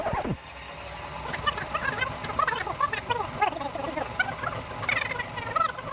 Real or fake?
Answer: real